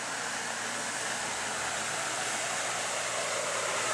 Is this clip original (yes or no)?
yes